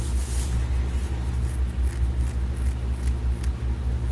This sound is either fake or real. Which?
real